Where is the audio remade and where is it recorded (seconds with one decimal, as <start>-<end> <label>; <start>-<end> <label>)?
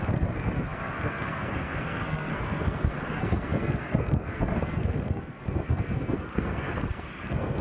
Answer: 0.0-7.6 remade